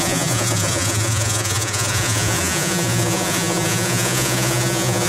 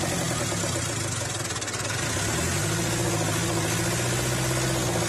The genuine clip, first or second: second